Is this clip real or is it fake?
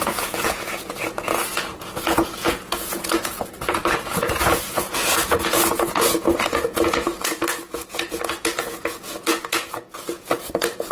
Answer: fake